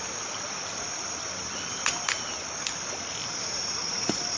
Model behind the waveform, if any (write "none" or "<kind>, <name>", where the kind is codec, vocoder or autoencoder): none